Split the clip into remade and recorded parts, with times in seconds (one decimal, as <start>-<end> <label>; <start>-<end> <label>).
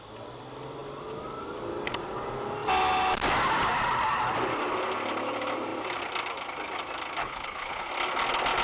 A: 0.0-7.2 recorded; 7.2-7.9 remade; 7.9-8.6 recorded